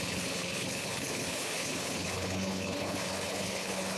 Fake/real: fake